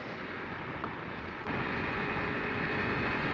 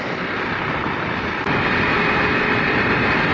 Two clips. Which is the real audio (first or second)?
second